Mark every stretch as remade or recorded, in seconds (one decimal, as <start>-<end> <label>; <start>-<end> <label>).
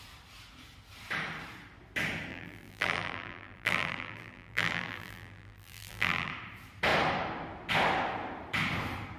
0.0-2.3 recorded; 2.3-6.3 remade; 6.3-9.2 recorded